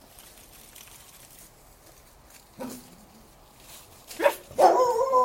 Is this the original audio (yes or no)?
yes